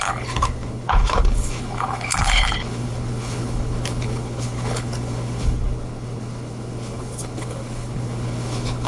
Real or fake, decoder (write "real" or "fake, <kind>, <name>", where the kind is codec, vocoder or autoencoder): fake, codec, HILCodec